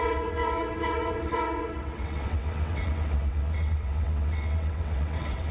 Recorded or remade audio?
remade